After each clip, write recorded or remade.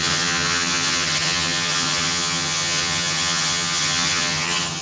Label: remade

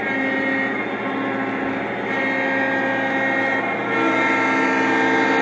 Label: recorded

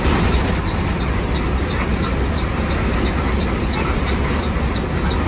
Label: recorded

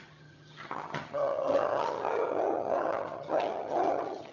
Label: remade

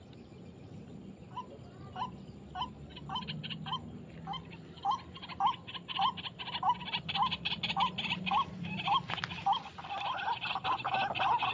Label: recorded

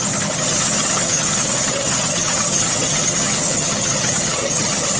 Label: remade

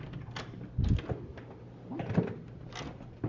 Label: recorded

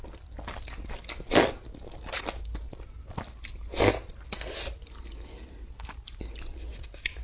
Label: recorded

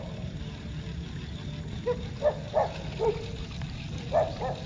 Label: recorded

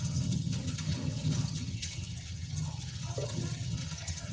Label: remade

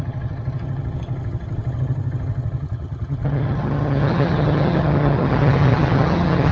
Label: remade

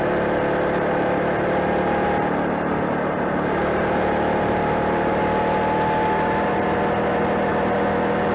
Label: recorded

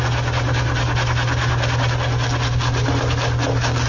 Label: recorded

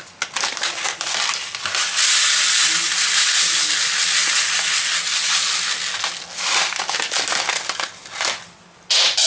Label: recorded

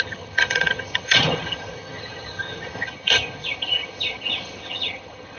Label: remade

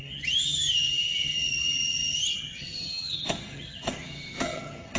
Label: remade